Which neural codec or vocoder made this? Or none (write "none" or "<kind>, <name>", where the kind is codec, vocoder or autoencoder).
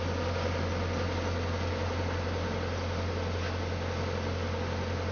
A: none